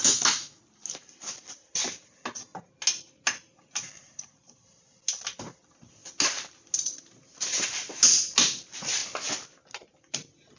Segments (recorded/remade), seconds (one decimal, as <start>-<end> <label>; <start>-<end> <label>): 0.0-0.6 remade; 0.6-10.6 recorded